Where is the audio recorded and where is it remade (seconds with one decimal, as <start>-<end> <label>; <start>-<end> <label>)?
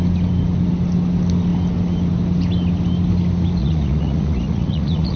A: 0.0-3.6 recorded; 3.6-5.2 remade